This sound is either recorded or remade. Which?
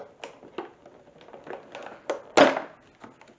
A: recorded